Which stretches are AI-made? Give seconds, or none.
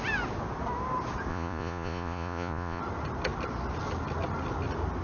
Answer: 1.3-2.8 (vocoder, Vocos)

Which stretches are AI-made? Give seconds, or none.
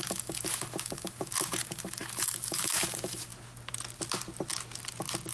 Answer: 0.0-3.3 (autoencoder, DAC-VAE)